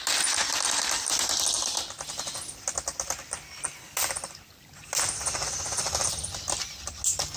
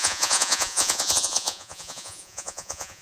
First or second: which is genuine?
first